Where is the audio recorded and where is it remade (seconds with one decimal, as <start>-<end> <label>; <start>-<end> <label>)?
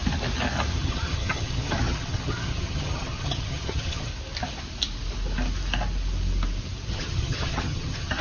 0.0-0.8 recorded; 0.8-4.1 remade; 4.1-6.9 recorded; 6.9-8.2 remade